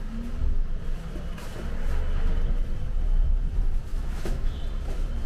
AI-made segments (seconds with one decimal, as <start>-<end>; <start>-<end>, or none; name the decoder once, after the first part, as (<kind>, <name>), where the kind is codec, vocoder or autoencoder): 3.9-4.6 (autoencoder, DAC-VAE)